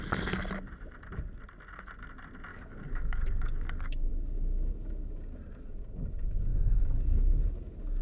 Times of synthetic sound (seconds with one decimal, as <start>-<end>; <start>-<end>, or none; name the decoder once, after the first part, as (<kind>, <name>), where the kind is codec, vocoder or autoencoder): 2.5-4.1 (codec, DAC); 6.5-7.4